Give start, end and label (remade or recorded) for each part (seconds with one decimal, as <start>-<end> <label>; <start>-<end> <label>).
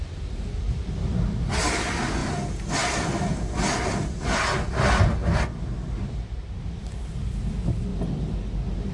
0.0-8.9 recorded